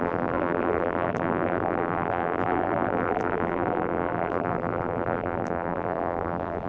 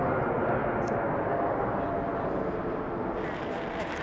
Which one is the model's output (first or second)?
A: first